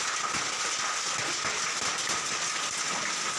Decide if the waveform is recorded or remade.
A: recorded